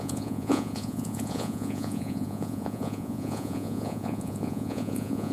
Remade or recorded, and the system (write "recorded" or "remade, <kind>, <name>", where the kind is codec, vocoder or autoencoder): remade, vocoder, Vocos